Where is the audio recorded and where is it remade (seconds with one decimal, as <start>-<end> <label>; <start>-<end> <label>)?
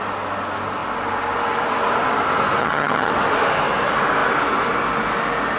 0.0-2.6 recorded; 2.6-3.1 remade; 3.1-5.6 recorded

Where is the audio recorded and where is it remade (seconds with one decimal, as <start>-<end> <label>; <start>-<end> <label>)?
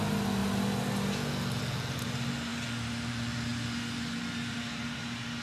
0.0-5.4 recorded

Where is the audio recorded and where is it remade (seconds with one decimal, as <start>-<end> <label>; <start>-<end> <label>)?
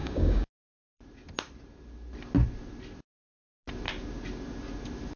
0.0-0.5 remade; 0.5-5.2 recorded